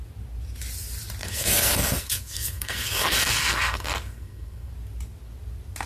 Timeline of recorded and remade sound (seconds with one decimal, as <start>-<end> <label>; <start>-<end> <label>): 0.0-1.2 recorded; 1.2-4.7 remade; 4.7-5.9 recorded